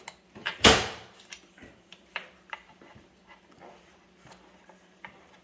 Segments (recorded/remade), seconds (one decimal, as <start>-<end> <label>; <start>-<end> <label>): 0.0-0.4 recorded; 0.4-3.6 remade; 3.6-5.4 recorded